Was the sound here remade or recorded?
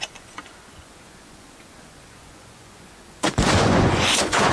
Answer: remade